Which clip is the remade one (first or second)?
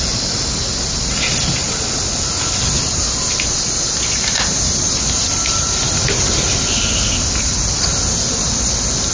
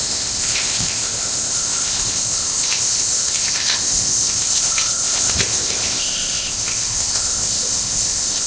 second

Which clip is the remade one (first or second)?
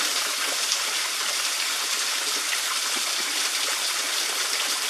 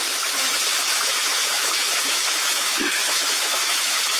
second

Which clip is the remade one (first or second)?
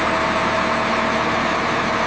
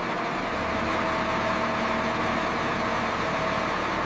first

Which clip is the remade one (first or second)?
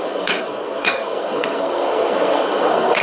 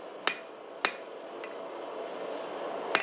first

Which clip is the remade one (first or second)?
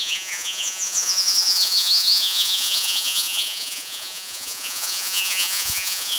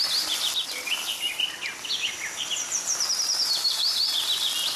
first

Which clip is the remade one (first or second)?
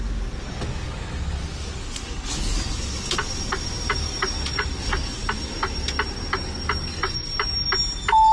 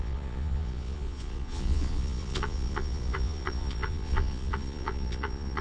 second